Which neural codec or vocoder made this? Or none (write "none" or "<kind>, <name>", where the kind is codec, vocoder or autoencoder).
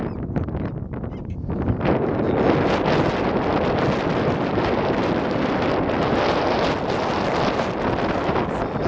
none